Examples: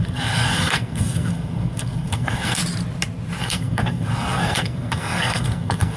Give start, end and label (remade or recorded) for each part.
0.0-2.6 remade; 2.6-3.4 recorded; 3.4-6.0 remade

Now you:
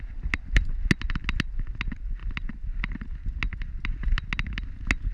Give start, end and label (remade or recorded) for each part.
0.0-5.1 recorded

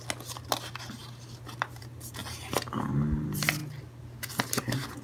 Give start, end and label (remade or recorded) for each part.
0.0-5.0 recorded

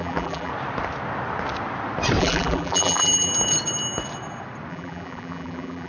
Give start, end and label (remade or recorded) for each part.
0.0-0.5 remade; 0.5-2.2 recorded; 2.2-3.3 remade; 3.3-4.7 recorded; 4.7-5.9 remade

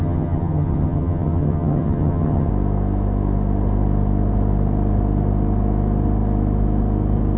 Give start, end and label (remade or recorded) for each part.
0.0-2.5 remade; 2.5-7.4 recorded